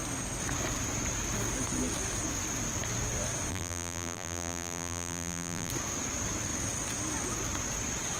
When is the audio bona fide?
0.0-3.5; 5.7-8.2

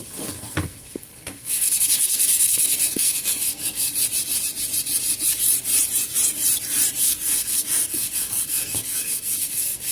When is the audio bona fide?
3.9-7.0

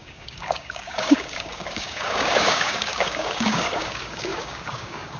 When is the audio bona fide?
none

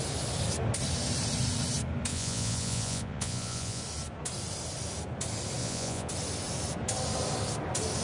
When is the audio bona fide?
0.0-2.1; 3.8-5.6; 6.1-8.0